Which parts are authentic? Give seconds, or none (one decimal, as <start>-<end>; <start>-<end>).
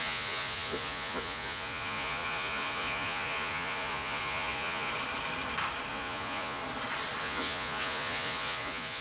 4.9-5.9; 6.6-7.2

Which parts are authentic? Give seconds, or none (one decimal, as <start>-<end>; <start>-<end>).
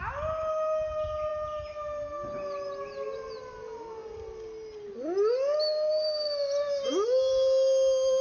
0.0-8.2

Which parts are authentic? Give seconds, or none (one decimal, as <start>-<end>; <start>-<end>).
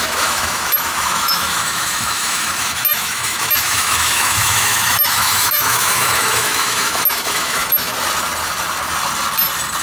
7.9-9.8